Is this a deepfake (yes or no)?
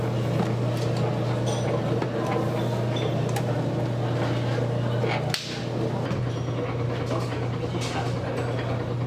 no